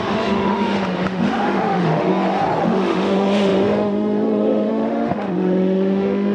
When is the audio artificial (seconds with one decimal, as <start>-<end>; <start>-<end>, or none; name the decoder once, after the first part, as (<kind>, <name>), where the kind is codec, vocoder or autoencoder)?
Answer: 0.0-2.1 (autoencoder, DAC-VAE); 2.6-6.3